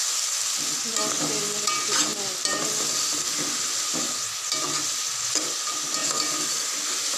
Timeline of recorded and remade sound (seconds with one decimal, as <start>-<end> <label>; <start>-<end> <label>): 0.0-7.2 recorded